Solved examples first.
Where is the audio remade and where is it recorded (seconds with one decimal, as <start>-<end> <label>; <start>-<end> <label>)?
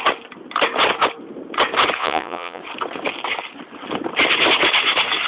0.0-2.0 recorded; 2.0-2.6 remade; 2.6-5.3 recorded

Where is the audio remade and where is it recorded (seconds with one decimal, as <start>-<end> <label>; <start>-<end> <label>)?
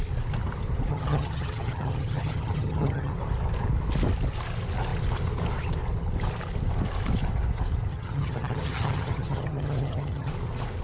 0.0-0.9 recorded; 0.9-3.1 remade; 3.1-7.9 recorded; 7.9-10.3 remade; 10.3-10.8 recorded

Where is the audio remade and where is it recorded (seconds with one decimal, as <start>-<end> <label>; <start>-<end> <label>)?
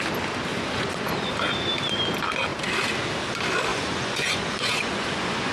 0.0-0.5 recorded; 0.5-1.3 remade; 1.3-3.7 recorded; 3.7-5.5 remade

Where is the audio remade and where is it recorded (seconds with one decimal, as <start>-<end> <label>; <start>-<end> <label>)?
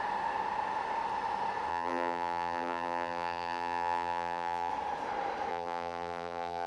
0.0-1.7 recorded; 1.7-4.7 remade; 4.7-5.5 recorded; 5.5-6.7 remade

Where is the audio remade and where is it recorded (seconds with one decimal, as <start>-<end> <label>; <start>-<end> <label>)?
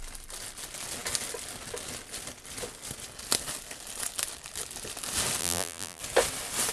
0.0-5.4 recorded; 5.4-6.0 remade; 6.0-6.7 recorded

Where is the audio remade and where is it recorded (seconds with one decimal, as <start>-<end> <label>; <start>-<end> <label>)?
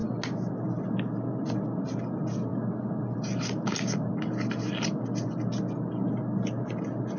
0.0-7.2 recorded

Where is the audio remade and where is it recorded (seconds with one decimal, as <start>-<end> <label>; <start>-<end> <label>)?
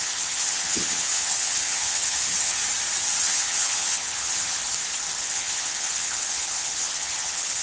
0.0-2.6 remade; 2.6-3.2 recorded; 3.2-4.6 remade; 4.6-5.2 recorded; 5.2-7.6 remade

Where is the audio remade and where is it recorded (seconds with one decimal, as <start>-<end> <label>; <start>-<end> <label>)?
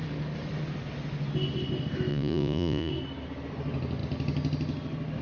0.0-2.1 recorded; 2.1-2.9 remade; 2.9-5.2 recorded